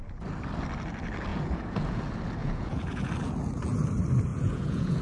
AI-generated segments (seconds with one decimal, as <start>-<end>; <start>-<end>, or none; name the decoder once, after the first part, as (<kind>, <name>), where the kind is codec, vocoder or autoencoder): 1.3-2.0 (vocoder, Vocos); 2.4-3.1; 4.3-5.0